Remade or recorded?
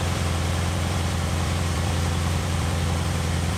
remade